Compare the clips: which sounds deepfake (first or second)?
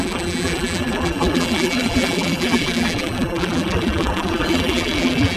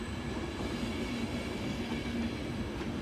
first